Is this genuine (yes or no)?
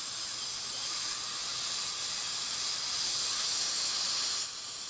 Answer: yes